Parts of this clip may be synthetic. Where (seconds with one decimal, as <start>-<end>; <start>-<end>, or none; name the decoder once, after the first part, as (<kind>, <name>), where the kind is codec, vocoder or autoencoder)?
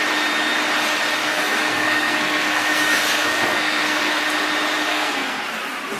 1.2-4.2 (codec, SNAC); 4.9-5.4